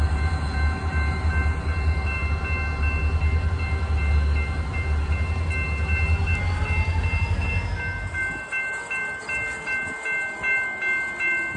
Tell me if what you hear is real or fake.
real